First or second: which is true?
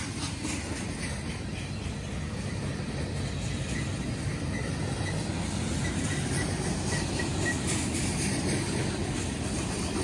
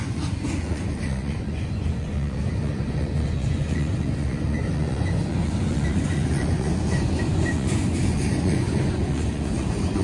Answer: first